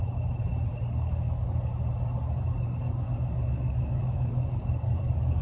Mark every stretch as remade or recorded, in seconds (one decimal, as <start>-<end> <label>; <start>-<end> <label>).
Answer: 0.0-0.7 recorded; 0.7-1.7 remade; 1.7-2.4 recorded; 2.4-5.4 remade